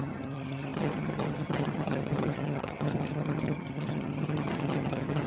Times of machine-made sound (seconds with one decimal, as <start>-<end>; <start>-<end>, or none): 0.0-5.3